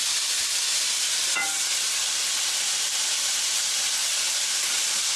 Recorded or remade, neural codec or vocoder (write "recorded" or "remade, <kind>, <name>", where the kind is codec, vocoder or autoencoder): recorded